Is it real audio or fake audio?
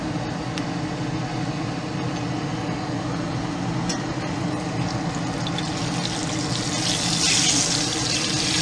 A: real